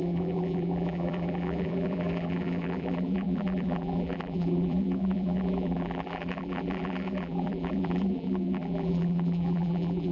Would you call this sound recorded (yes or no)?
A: no